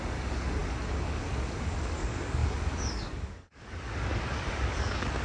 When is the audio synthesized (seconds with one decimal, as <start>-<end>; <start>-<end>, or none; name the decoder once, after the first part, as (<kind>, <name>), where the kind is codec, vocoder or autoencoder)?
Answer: 0.0-5.2 (codec, DAC)